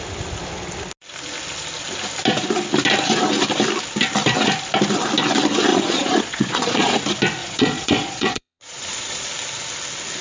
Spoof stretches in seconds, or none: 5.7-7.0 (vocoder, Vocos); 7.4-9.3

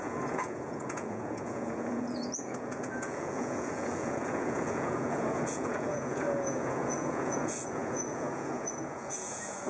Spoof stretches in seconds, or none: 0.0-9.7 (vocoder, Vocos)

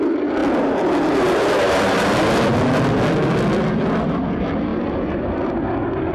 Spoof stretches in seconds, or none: none

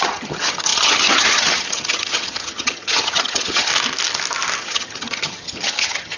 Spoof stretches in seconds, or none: 0.0-3.7 (vocoder, HiFi-GAN); 4.6-6.2

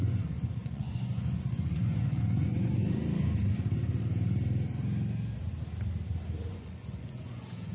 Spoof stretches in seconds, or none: 0.0-2.8 (vocoder, Vocos); 6.5-7.7

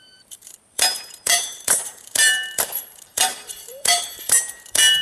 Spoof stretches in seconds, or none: 0.0-5.0 (vocoder, BigVGAN v2)

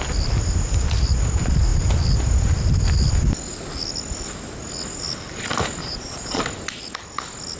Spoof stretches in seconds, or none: 5.8-6.4 (vocoder, Vocos)

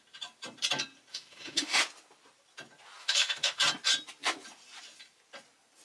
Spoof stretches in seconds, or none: 1.1-1.8 (autoencoder, DAC-VAE); 3.0-3.6